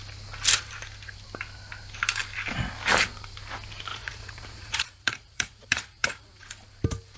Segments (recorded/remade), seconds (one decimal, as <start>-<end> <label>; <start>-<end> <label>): 0.0-3.9 recorded; 3.9-6.4 remade; 6.4-7.2 recorded